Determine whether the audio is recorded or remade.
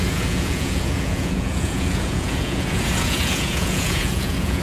remade